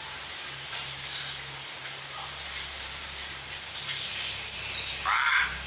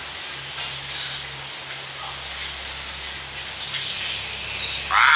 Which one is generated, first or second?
first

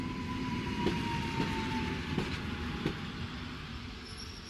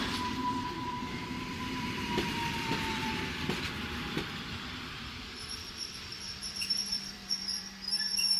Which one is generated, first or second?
second